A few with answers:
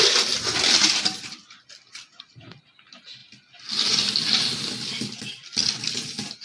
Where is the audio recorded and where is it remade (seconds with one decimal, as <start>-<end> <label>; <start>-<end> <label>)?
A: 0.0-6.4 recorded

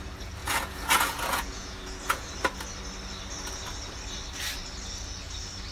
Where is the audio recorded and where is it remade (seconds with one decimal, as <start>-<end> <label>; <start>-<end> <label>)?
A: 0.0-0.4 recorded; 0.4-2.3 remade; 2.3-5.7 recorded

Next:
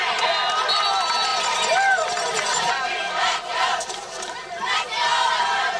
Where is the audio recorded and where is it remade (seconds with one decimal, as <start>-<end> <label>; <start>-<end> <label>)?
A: 0.0-1.3 recorded; 1.3-4.8 remade; 4.8-5.8 recorded

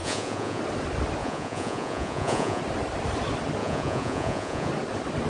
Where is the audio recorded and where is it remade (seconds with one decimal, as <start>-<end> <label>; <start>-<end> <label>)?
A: 0.0-0.6 remade; 0.6-1.2 recorded; 1.2-2.6 remade; 2.6-3.6 recorded; 3.6-4.7 remade; 4.7-5.3 recorded

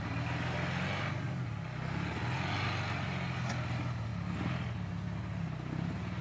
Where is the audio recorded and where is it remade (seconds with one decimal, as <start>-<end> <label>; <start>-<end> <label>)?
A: 0.0-6.2 recorded

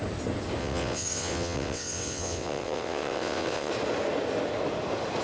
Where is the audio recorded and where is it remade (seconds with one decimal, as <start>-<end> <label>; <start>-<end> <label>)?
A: 0.0-0.6 recorded; 0.6-3.7 remade; 3.7-5.2 recorded

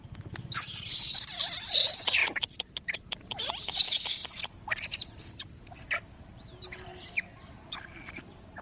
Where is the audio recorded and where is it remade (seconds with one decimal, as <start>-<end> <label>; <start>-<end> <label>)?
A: 0.0-8.6 recorded

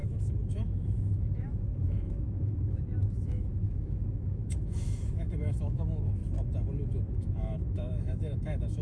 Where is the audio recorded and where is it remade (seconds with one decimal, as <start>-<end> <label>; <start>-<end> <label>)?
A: 0.0-6.2 remade; 6.2-7.2 recorded; 7.2-8.8 remade